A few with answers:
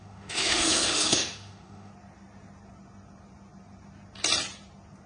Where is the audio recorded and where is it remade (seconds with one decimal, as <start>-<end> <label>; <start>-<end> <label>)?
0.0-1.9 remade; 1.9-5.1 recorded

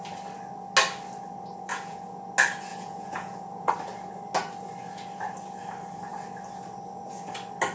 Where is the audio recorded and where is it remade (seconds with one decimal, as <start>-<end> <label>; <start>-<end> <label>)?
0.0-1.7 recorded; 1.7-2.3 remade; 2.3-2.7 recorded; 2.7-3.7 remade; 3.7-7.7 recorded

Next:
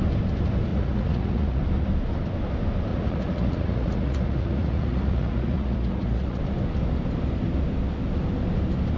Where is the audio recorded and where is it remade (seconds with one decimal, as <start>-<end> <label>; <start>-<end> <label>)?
0.0-0.7 recorded; 0.7-1.6 remade; 1.6-2.9 recorded; 2.9-6.4 remade; 6.4-9.0 recorded

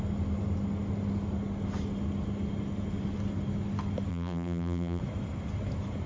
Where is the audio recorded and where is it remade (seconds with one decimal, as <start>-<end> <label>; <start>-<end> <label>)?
0.0-4.1 recorded; 4.1-5.0 remade; 5.0-6.1 recorded